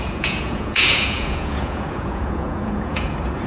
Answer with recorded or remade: remade